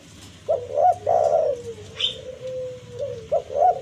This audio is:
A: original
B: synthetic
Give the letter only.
A